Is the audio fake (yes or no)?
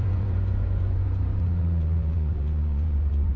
yes